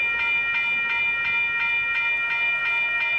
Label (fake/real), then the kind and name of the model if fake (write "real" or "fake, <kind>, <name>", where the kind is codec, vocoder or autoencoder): real